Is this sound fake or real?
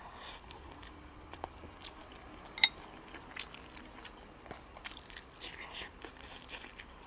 real